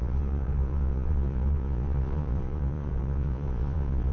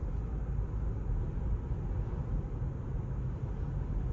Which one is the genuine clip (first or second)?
second